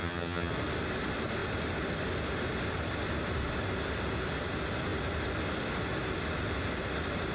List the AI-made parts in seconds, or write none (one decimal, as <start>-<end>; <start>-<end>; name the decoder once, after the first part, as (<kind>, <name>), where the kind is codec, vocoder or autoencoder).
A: 0.0-0.5 (vocoder, HiFi-GAN)